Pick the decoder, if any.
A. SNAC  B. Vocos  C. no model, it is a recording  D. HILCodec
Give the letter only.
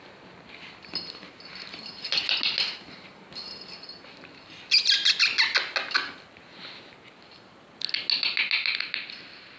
C